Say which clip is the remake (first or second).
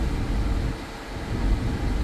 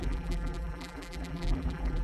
second